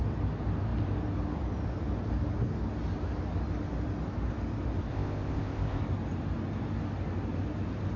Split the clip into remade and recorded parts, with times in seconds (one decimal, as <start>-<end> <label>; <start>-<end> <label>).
0.0-4.9 recorded; 4.9-5.8 remade; 5.8-8.0 recorded